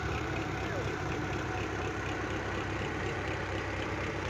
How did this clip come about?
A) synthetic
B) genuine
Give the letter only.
A